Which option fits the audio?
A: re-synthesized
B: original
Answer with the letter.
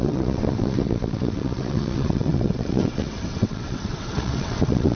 A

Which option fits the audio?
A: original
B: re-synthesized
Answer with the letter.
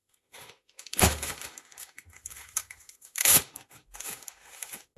B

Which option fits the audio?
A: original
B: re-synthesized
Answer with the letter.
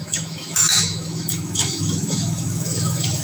B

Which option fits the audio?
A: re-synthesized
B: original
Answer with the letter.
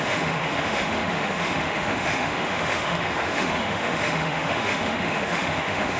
A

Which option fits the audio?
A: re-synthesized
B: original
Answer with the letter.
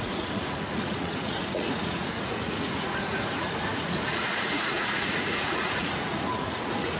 A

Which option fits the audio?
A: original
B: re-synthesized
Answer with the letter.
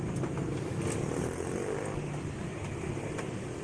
A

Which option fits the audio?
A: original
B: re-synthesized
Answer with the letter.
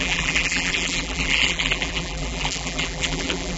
B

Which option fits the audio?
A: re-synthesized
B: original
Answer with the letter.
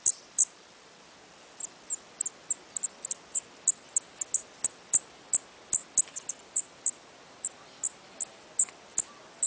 B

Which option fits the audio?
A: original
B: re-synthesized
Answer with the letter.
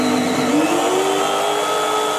A